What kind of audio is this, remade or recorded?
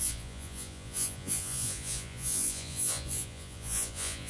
remade